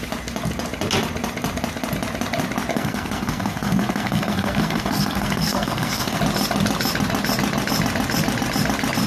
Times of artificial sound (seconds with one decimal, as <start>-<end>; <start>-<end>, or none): 2.7-6.2